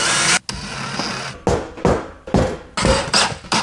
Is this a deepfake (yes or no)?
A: no